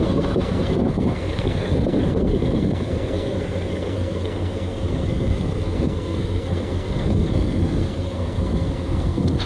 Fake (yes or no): yes